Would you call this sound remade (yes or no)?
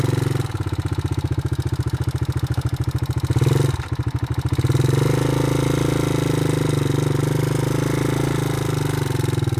no